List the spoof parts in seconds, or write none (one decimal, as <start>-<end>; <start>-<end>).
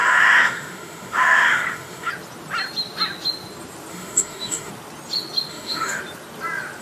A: 0.0-2.1; 3.9-4.7; 5.5-6.0